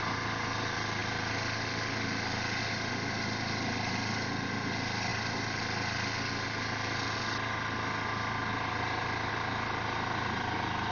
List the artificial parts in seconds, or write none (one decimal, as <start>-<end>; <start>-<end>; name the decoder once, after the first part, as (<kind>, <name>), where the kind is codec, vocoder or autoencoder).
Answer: none